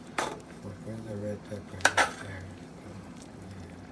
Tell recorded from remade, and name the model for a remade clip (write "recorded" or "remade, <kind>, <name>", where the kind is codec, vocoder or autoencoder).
remade, vocoder, BigVGAN v2